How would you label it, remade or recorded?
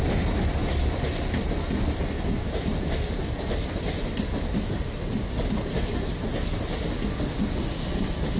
recorded